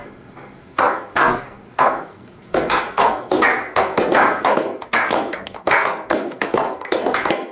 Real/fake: fake